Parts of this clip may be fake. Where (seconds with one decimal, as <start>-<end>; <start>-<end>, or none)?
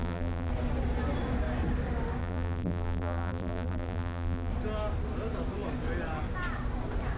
0.0-0.5; 2.2-4.5